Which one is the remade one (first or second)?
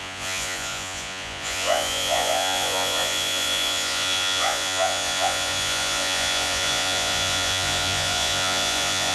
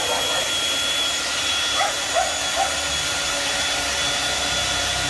first